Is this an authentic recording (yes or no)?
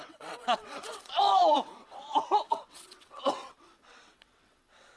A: no